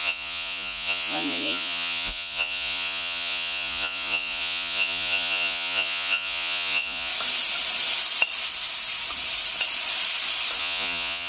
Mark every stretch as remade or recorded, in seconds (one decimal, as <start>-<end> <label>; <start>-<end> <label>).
0.0-7.1 remade; 7.1-10.6 recorded; 10.6-11.3 remade